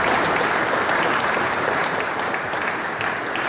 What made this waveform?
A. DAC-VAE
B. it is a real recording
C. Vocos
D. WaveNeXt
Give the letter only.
B